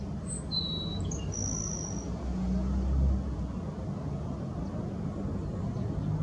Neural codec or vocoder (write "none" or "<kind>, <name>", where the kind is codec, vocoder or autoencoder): none